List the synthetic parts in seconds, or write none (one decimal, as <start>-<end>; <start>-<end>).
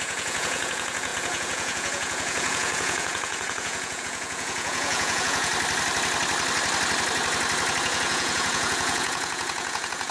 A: 0.0-5.5; 7.8-10.1